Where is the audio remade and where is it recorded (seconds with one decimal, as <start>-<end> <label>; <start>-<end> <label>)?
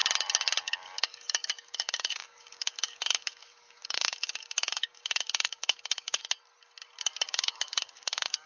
0.0-0.6 recorded; 0.6-6.2 remade; 6.2-7.0 recorded; 7.0-8.5 remade